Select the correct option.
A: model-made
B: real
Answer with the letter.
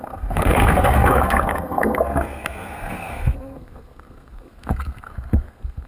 A